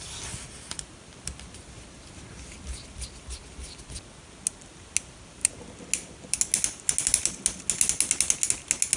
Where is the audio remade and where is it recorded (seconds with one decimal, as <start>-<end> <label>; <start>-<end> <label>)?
0.0-9.0 recorded